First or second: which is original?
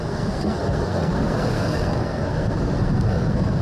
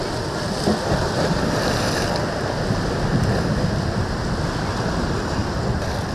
second